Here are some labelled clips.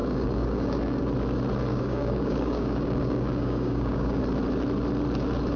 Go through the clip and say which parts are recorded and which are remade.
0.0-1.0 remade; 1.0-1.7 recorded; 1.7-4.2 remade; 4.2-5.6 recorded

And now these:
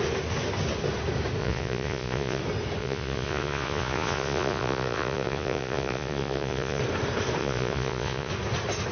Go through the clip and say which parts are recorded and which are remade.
0.0-1.4 recorded; 1.4-2.4 remade; 2.4-2.8 recorded; 2.8-6.8 remade; 6.8-7.4 recorded; 7.4-8.3 remade; 8.3-8.9 recorded

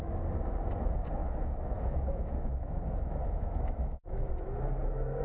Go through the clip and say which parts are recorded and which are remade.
0.0-1.2 recorded; 1.2-4.3 remade; 4.3-5.2 recorded

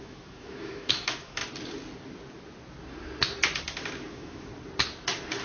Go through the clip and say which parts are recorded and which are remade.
0.0-1.4 remade; 1.4-4.1 recorded; 4.1-4.5 remade; 4.5-5.4 recorded

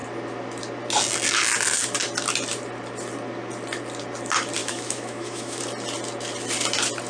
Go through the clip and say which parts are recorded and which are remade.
0.0-4.6 recorded; 4.6-5.6 remade; 5.6-7.1 recorded

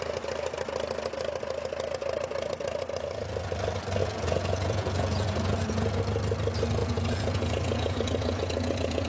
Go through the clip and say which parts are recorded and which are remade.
0.0-4.0 recorded; 4.0-6.0 remade; 6.0-6.8 recorded; 6.8-9.1 remade

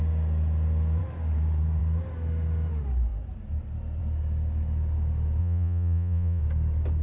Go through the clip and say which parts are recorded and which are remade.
0.0-5.4 recorded; 5.4-6.4 remade; 6.4-7.0 recorded

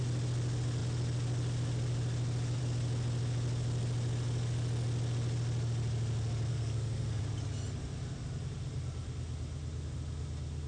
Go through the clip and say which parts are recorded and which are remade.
0.0-6.5 recorded; 6.5-7.2 remade; 7.2-10.7 recorded